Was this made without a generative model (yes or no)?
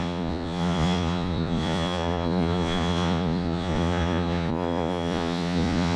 no